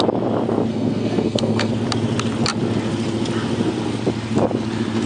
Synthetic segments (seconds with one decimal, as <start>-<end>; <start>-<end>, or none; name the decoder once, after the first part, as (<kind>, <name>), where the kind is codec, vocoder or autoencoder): 0.7-1.7 (codec, SNAC)